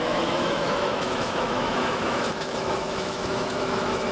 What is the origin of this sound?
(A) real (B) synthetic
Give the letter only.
B